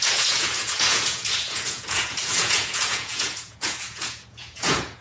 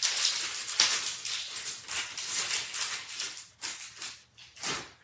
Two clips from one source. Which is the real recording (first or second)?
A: second